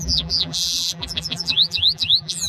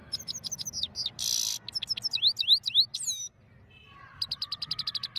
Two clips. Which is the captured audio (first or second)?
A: second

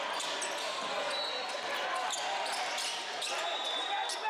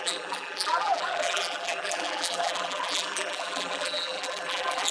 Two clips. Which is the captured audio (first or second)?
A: first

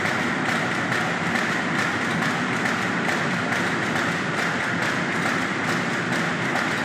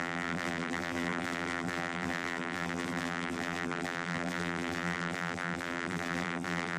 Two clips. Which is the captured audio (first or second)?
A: first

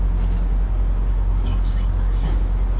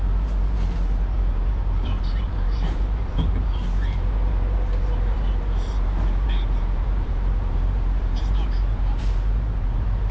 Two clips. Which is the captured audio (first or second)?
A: first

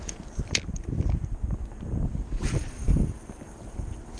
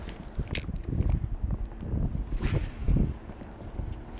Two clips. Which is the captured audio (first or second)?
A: second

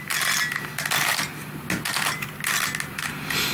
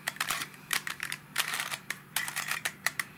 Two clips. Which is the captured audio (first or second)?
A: first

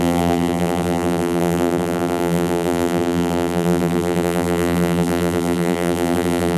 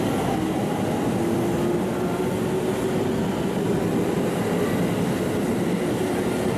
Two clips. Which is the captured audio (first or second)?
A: second